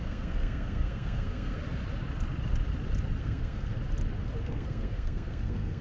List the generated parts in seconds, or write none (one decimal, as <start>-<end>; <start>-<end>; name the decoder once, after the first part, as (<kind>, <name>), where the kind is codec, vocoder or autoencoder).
0.0-1.6 (codec, SNAC); 3.2-3.7; 4.4-5.8